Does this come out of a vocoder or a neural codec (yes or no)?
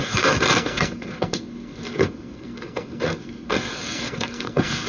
yes